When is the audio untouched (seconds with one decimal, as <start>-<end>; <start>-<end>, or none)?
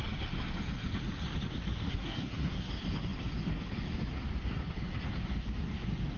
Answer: 0.0-1.9; 2.7-6.2